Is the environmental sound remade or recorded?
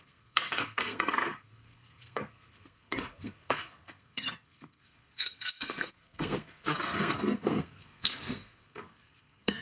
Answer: remade